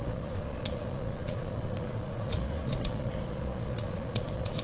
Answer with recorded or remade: remade